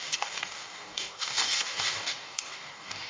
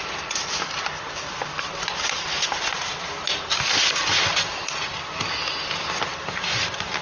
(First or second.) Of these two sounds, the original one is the second